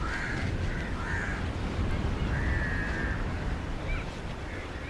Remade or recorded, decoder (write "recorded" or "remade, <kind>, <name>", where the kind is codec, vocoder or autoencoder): recorded